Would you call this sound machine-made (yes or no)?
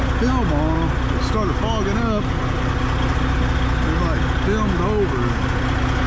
no